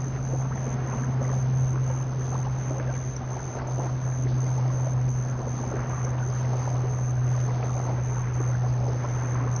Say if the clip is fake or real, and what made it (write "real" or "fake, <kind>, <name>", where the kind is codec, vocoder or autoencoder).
real